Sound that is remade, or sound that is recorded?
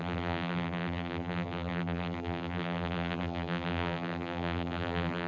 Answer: remade